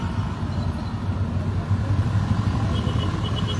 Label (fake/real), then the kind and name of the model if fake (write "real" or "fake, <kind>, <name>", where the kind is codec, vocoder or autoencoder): real